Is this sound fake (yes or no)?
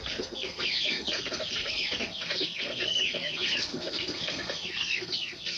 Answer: yes